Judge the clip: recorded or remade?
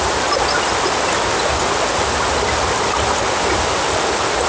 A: recorded